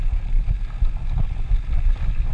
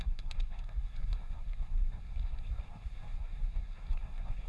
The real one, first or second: first